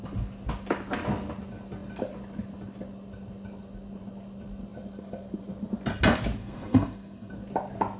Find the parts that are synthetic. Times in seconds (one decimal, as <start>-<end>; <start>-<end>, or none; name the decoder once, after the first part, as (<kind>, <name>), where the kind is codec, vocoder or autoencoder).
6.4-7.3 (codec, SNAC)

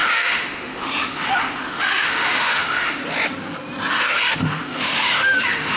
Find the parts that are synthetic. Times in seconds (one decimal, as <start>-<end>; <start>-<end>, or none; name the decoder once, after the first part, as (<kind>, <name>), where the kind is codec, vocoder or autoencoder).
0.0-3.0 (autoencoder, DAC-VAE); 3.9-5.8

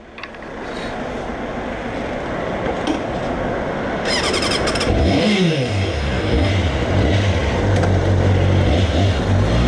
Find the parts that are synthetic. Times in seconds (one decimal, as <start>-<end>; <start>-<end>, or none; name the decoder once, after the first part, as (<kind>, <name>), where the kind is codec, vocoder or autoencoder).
5.0-6.5 (codec, DAC)

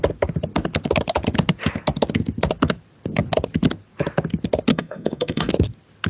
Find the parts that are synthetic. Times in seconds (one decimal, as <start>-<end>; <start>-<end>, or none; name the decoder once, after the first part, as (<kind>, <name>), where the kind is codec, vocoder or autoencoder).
4.7-5.5 (codec, SNAC)

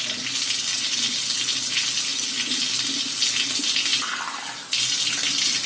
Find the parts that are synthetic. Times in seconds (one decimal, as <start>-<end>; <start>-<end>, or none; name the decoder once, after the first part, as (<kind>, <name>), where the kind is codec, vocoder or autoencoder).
none